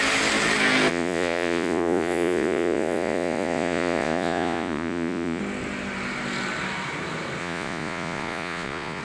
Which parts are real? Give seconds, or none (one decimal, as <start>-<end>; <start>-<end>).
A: 0.0-0.9; 5.4-7.4